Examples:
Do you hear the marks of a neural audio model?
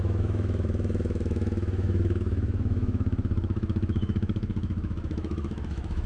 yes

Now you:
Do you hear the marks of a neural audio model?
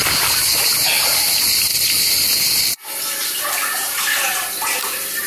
no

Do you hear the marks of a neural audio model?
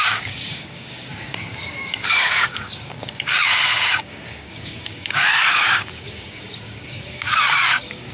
yes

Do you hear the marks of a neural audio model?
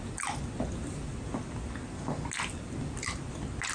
no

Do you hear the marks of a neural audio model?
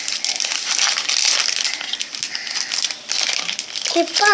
no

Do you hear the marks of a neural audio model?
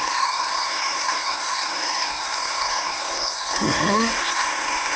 yes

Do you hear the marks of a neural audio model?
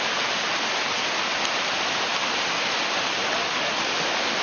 no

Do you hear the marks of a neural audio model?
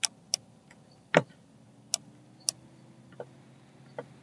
no